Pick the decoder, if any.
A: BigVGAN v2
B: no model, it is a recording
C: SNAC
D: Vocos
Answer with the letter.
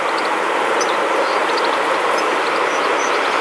A